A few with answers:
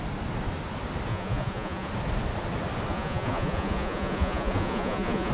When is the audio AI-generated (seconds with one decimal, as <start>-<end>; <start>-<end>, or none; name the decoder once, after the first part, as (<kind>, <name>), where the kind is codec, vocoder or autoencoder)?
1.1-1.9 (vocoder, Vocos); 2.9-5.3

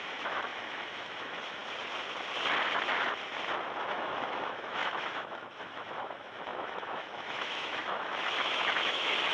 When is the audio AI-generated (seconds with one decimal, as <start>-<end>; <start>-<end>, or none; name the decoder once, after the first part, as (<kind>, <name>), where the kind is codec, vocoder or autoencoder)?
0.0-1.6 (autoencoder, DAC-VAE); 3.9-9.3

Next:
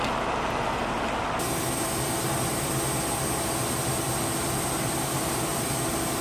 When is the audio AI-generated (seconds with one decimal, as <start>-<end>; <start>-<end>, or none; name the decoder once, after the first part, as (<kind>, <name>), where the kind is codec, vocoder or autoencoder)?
none

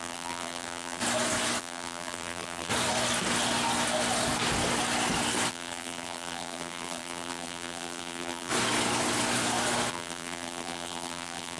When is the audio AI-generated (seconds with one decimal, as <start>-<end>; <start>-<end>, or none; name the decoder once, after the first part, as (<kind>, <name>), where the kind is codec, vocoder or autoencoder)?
0.0-1.0 (vocoder, BigVGAN v2); 1.6-2.7; 5.5-8.5; 9.9-11.6

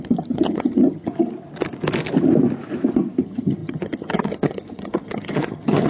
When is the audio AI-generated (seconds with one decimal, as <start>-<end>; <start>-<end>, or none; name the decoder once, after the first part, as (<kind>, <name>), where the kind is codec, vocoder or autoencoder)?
0.0-1.1 (vocoder, HiFi-GAN); 3.2-5.9

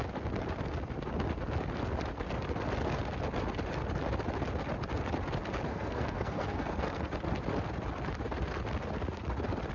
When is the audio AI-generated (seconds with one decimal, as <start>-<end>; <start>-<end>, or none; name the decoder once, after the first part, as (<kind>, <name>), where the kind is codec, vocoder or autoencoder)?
5.7-7.1 (codec, SNAC)